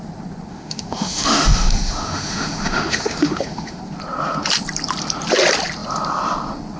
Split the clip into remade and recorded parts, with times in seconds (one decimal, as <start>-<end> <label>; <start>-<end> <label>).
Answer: 0.0-0.5 recorded; 0.5-3.8 remade; 3.8-6.8 recorded